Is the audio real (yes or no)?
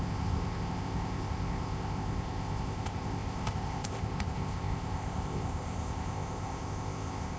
no